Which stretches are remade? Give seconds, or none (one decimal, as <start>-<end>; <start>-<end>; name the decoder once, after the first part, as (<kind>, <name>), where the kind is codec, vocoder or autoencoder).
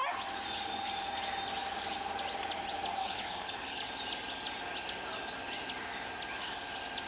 3.0-3.8 (codec, HILCodec)